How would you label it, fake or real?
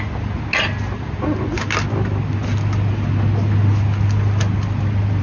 real